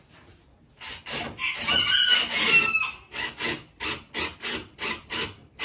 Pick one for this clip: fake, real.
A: real